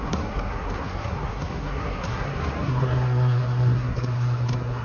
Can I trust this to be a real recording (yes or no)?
no